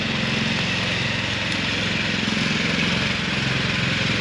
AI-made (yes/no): no